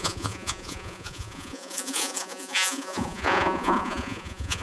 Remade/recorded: remade